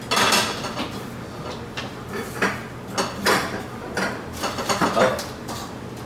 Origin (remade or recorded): recorded